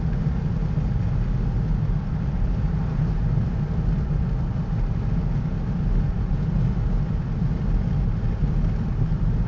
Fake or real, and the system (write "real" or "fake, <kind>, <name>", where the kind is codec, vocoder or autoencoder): real